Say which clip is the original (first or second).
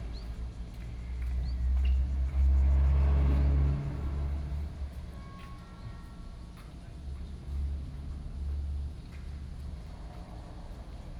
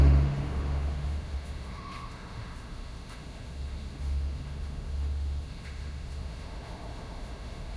first